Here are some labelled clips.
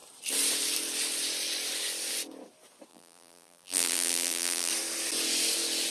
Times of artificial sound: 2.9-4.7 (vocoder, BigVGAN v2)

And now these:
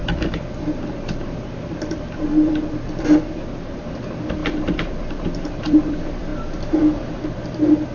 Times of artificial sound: 0.0-7.9 (vocoder, BigVGAN v2)

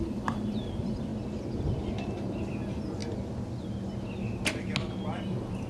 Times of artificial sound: 0.0-1.1 (vocoder, BigVGAN v2); 2.4-3.0; 5.2-5.7

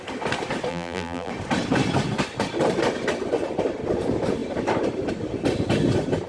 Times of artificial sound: 0.7-1.3 (vocoder, BigVGAN v2)

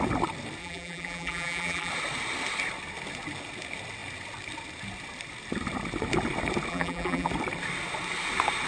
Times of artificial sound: 0.6-1.9 (vocoder, BigVGAN v2); 6.7-7.3